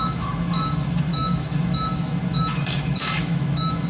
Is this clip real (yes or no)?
no